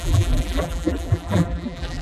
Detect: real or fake fake